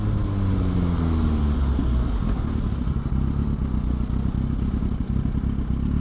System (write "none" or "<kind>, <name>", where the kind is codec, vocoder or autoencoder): none